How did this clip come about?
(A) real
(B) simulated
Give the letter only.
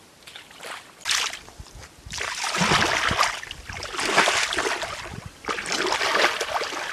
A